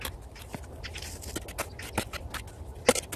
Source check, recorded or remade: recorded